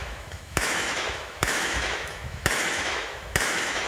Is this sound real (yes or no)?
no